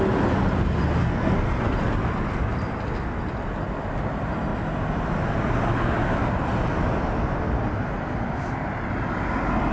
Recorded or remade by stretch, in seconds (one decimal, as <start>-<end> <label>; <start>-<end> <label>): 0.0-1.0 recorded; 1.0-1.6 remade; 1.6-9.7 recorded